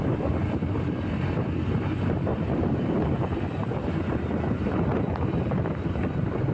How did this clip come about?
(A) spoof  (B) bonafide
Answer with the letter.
A